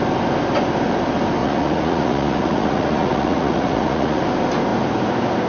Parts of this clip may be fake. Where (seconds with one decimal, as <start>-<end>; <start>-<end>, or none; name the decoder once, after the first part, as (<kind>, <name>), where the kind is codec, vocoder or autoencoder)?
1.4-4.2 (vocoder, Vocos)